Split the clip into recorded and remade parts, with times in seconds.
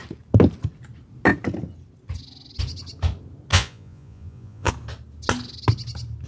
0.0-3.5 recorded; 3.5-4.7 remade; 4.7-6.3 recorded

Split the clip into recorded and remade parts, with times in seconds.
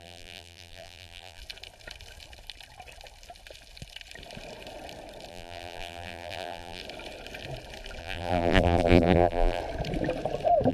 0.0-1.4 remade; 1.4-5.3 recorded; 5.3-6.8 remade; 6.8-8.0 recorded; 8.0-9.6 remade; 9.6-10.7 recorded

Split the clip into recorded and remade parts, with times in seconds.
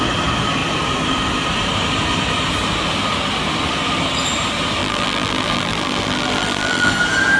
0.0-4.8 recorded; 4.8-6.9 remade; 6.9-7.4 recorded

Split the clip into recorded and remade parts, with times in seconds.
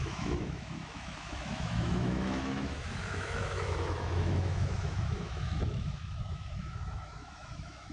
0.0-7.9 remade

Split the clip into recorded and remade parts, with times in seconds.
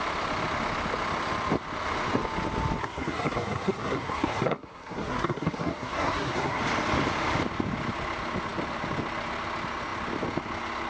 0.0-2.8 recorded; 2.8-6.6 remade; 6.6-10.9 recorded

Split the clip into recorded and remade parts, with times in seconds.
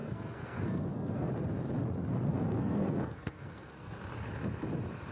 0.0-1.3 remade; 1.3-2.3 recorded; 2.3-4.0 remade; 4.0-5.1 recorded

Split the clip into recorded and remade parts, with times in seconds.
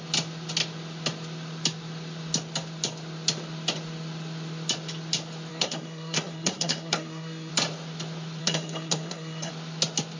0.0-5.5 recorded; 5.5-7.5 remade; 7.5-8.4 recorded; 8.4-9.5 remade; 9.5-10.2 recorded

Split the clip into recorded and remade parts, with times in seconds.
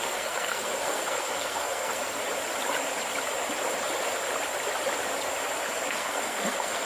0.0-2.2 remade; 2.2-5.9 recorded; 5.9-6.9 remade